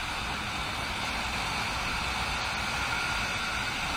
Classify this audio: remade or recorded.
recorded